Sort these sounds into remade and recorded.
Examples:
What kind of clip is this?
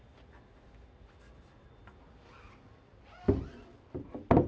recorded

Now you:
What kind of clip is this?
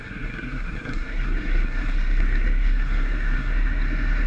remade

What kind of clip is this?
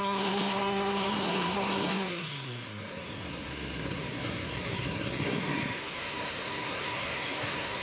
remade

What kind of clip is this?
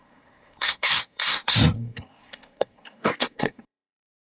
remade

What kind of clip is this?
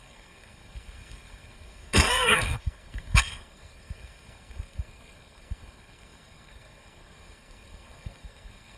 remade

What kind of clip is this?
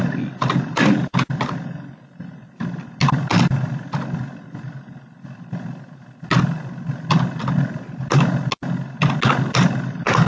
recorded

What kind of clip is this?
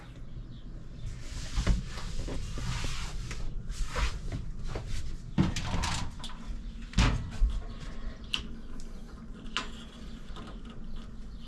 recorded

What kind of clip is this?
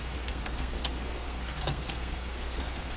remade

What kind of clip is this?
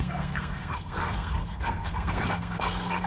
remade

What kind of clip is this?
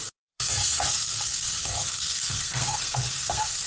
remade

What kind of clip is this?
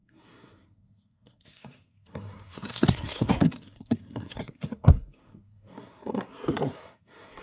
remade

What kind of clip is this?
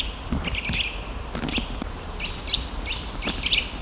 recorded